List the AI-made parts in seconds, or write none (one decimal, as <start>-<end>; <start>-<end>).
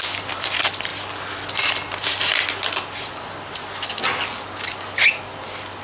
none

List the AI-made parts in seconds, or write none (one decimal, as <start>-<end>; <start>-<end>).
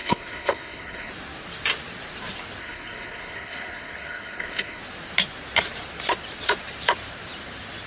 0.0-1.1; 2.6-4.8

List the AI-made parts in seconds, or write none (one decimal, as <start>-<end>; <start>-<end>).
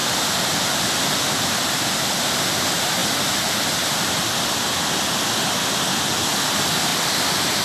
6.9-7.6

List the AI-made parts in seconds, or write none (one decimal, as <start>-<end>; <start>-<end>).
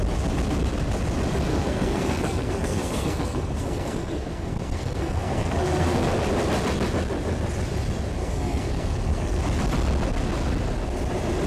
1.5-6.1; 8.2-9.4